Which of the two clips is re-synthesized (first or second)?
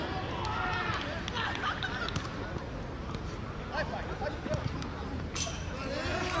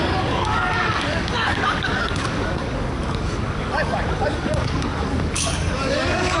second